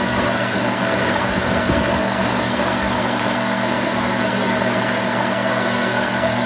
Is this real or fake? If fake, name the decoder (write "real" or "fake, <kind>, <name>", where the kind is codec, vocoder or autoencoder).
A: fake, codec, SNAC